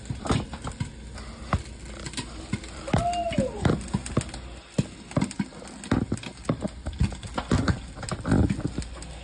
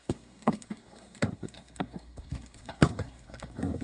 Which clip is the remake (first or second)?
second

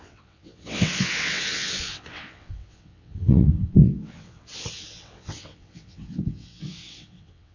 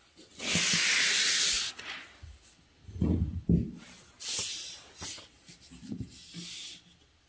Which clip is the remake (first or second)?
first